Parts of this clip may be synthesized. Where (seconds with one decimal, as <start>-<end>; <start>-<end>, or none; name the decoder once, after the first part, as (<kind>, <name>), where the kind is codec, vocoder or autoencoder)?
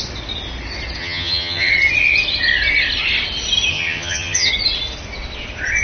1.0-1.7 (vocoder, HiFi-GAN); 3.7-4.5